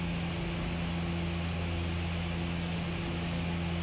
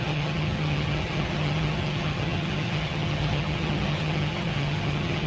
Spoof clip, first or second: second